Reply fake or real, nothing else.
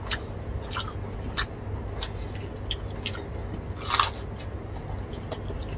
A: real